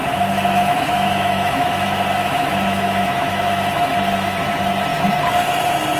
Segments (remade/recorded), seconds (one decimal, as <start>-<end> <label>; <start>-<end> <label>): 0.0-3.6 remade; 3.6-6.0 recorded